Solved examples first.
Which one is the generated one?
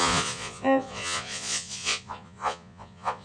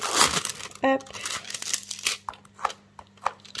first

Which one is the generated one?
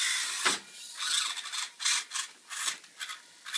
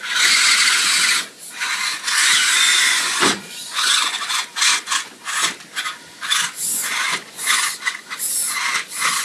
second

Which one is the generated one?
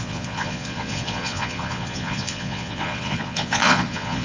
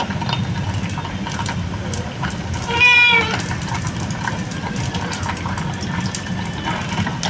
first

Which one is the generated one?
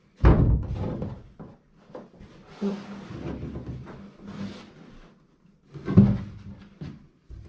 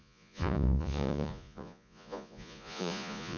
second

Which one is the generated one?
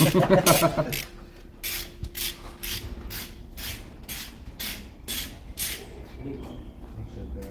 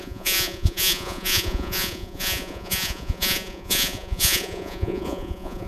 second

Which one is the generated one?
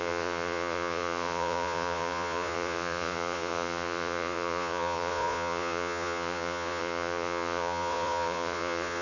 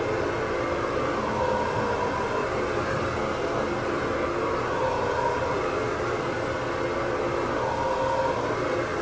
first